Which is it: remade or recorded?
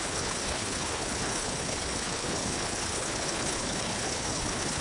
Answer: remade